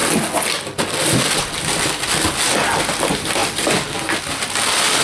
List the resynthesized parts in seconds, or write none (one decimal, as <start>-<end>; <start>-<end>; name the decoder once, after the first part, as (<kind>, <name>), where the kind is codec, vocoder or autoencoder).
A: none